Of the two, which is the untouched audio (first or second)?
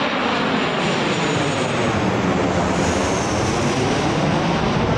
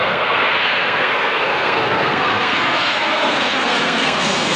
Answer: first